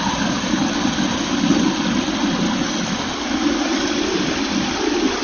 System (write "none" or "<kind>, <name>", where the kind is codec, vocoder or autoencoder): none